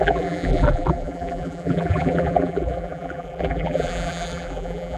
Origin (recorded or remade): remade